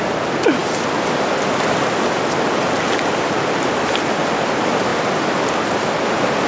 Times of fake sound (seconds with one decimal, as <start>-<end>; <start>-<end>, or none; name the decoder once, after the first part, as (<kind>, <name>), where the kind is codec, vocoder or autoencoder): none